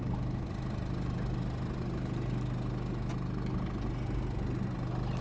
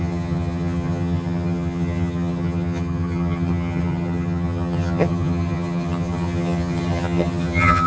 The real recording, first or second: first